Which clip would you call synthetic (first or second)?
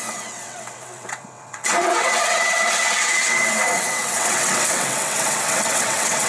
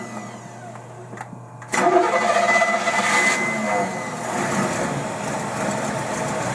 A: first